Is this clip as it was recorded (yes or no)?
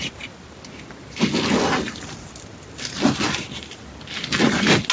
yes